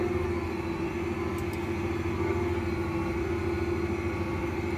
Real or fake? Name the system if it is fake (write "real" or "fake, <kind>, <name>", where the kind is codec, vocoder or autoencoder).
real